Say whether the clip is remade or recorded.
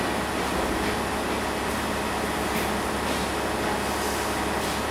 recorded